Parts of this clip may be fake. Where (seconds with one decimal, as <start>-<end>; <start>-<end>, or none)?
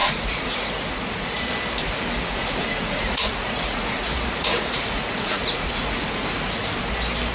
0.0-1.5; 2.3-6.7